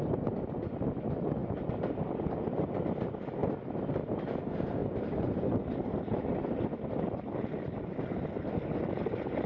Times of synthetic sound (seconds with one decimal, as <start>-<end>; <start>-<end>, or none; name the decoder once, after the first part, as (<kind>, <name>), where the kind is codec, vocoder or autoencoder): none